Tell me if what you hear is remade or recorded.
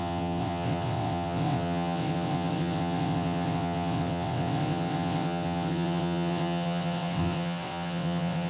remade